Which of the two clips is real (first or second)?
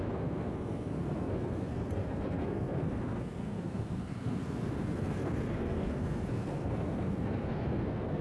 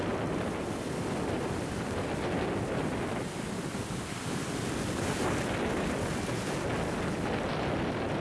second